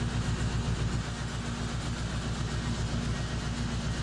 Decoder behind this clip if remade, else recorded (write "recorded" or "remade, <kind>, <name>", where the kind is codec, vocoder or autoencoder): recorded